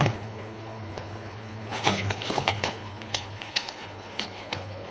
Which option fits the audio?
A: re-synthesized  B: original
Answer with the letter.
A